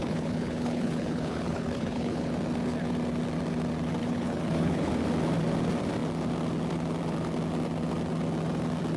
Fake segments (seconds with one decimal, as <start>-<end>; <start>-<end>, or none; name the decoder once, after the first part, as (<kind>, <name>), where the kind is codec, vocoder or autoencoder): 0.0-2.3 (codec, HILCodec); 4.0-4.9